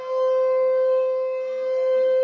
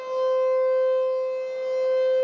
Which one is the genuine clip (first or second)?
second